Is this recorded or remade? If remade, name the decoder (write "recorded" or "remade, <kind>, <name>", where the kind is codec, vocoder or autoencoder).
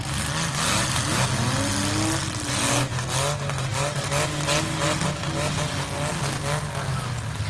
recorded